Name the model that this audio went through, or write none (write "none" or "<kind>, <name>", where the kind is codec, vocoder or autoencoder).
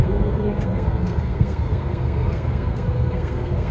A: codec, SNAC